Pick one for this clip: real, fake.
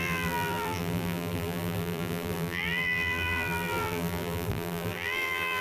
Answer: fake